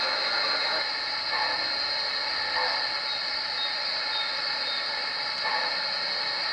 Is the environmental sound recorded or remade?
recorded